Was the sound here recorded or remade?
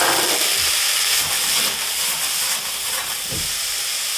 recorded